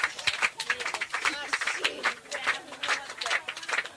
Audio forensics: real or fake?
real